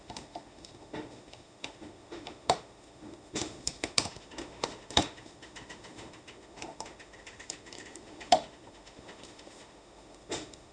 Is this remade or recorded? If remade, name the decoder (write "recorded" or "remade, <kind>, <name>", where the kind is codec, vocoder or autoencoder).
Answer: remade, autoencoder, DAC-VAE